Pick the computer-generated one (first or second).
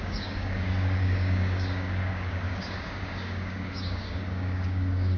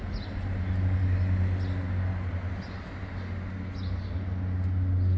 first